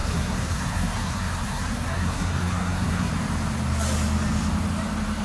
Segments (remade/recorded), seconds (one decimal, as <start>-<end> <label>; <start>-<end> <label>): 0.0-3.1 remade; 3.1-5.2 recorded